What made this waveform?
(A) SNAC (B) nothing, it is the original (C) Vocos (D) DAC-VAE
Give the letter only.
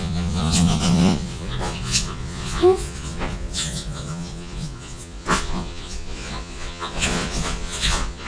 C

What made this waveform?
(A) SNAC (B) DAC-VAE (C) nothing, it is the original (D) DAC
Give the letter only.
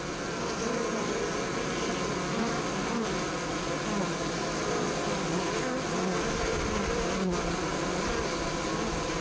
C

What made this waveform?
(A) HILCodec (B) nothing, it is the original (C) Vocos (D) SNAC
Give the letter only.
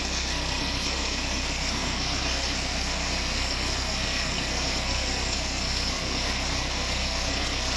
D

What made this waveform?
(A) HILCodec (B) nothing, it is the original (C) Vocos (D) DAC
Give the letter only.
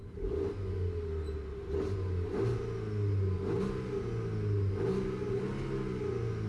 B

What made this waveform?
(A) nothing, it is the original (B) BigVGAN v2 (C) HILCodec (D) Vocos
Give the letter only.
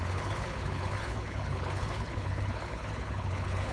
C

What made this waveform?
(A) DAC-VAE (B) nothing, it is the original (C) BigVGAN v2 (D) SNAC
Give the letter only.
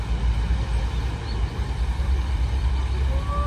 B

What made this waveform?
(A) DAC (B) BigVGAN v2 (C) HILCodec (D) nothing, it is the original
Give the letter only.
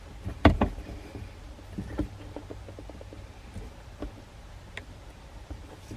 B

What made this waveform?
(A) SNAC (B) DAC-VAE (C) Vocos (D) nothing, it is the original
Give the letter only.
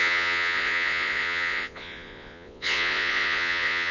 C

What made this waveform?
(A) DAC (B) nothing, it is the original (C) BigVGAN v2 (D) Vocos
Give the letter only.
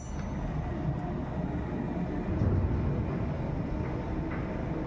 B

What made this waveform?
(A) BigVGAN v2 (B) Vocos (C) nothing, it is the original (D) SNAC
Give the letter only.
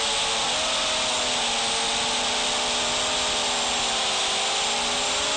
C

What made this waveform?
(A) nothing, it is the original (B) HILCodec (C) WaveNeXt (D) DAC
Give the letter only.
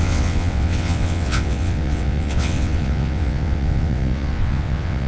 C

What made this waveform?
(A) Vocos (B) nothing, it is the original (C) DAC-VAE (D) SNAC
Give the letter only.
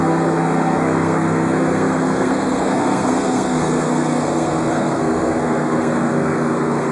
D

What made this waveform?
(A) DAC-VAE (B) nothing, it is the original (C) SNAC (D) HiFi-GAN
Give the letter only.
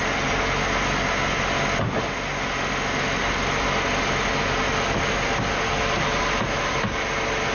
B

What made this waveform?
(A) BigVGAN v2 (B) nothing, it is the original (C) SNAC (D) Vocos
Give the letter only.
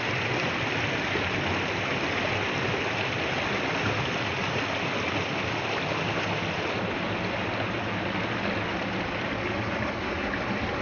B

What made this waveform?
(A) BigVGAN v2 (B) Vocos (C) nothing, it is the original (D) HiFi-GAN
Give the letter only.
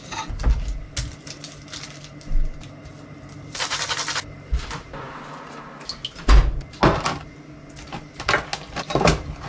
C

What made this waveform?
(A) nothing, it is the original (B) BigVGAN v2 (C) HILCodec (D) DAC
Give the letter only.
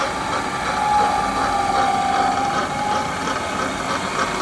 A